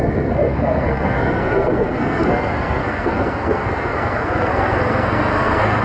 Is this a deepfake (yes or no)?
yes